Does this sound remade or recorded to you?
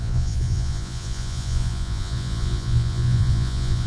remade